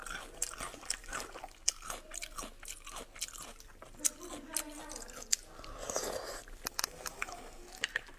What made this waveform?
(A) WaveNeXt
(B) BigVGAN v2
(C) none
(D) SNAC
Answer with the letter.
C